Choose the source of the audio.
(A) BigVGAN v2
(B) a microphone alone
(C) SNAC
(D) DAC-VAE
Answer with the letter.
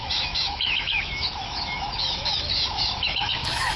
D